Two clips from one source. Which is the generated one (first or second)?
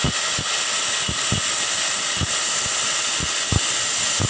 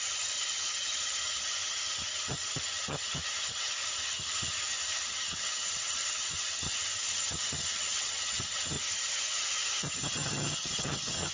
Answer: second